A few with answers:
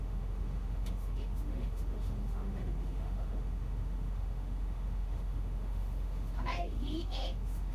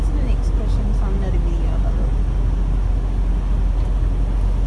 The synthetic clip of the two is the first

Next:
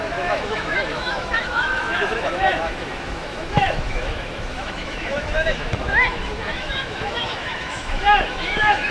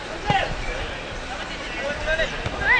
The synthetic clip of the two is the first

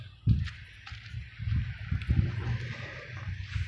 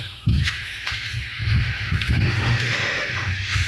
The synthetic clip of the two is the second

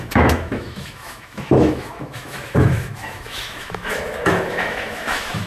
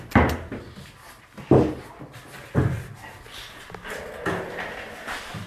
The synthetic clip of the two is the first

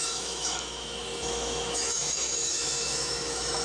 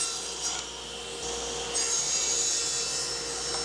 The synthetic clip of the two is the first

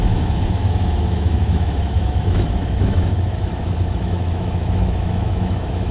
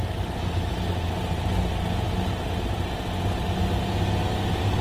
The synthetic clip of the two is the first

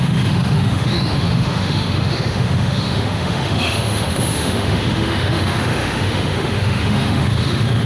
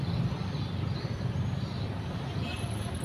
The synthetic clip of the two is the first